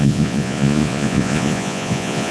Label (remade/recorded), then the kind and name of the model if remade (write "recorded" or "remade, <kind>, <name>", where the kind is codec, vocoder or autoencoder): remade, vocoder, Vocos